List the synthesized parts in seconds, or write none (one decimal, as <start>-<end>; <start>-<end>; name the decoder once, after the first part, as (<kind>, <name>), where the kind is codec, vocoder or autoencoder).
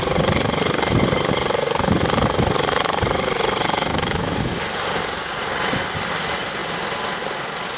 3.9-4.6 (autoencoder, DAC-VAE)